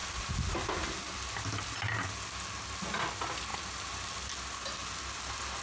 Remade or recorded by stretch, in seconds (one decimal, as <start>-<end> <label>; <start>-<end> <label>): 0.0-5.6 recorded